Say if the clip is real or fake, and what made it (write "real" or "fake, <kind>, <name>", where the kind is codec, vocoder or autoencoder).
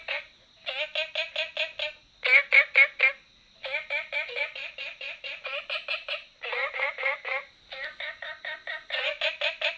real